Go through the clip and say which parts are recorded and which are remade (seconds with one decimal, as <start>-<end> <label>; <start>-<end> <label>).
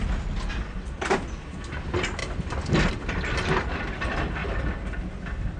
0.0-2.2 recorded; 2.2-2.9 remade; 2.9-5.6 recorded